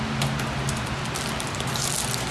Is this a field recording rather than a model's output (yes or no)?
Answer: yes